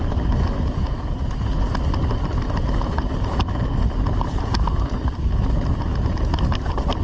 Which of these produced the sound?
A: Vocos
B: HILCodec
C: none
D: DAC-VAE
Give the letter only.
C